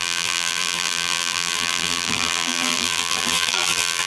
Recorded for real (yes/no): no